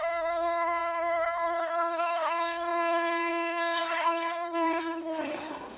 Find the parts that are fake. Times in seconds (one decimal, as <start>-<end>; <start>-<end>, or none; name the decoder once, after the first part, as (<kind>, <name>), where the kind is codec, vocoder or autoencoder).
0.0-5.8 (codec, SNAC)